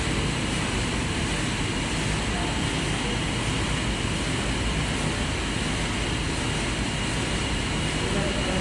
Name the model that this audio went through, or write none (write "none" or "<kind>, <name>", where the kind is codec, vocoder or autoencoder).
none